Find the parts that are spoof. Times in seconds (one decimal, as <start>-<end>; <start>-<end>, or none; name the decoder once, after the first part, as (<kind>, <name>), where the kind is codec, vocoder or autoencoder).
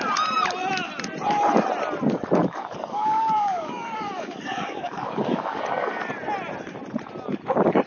2.4-6.0 (codec, DAC)